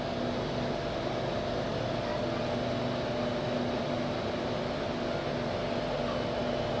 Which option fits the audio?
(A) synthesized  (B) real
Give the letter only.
B